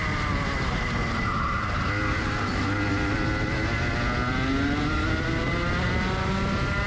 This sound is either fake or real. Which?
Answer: real